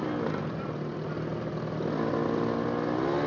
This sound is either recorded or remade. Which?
recorded